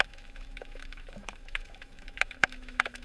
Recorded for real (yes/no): no